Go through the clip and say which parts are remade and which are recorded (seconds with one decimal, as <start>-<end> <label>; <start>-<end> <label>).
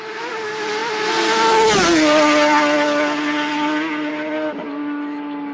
0.0-5.5 recorded